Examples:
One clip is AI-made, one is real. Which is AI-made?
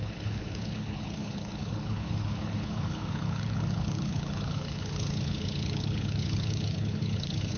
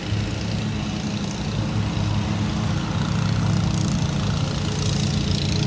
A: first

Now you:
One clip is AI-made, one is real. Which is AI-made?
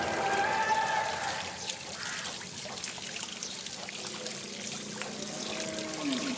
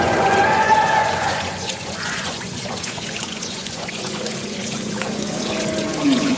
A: second